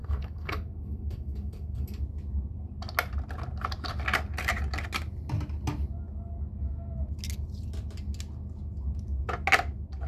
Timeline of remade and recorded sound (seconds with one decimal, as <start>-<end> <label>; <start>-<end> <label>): 0.0-2.0 remade; 2.0-10.1 recorded